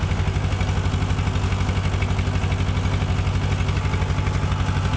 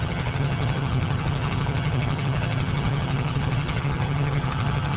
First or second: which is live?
first